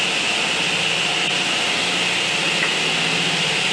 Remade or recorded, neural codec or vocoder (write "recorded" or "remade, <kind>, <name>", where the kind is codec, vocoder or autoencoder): recorded